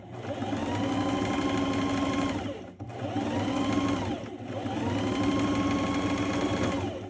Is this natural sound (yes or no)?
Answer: yes